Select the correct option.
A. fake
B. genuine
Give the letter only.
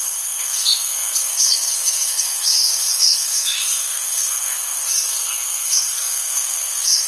A